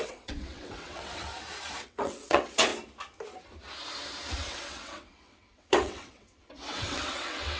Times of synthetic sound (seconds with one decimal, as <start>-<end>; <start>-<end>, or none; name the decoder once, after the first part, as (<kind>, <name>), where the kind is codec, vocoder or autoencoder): 0.0-1.3 (vocoder, WaveNeXt); 1.8-2.7; 4.3-7.6